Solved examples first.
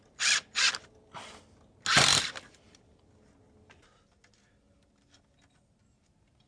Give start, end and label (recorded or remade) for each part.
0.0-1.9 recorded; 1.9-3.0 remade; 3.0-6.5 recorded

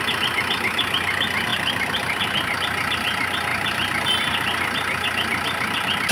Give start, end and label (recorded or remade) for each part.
0.0-1.5 recorded; 1.5-2.2 remade; 2.2-3.5 recorded; 3.5-4.1 remade; 4.1-6.1 recorded

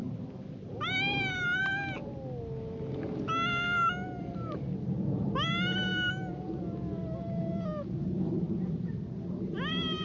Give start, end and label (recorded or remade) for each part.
0.0-10.0 recorded

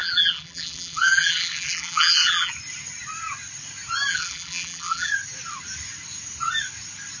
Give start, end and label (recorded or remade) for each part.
0.0-2.5 remade; 2.5-4.1 recorded; 4.1-5.1 remade; 5.1-7.2 recorded

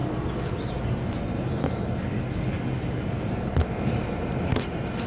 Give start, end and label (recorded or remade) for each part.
0.0-3.1 recorded; 3.1-5.1 remade

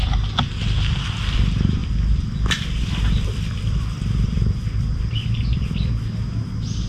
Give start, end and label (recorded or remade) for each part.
0.0-1.8 recorded; 1.8-5.9 remade; 5.9-6.9 recorded